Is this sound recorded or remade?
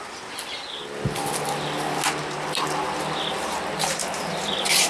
recorded